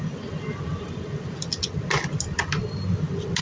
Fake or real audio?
real